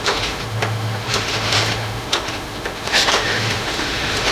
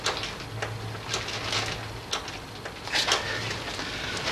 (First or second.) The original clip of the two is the second